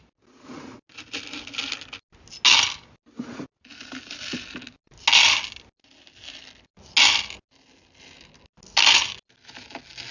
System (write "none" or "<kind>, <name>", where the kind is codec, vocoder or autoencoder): none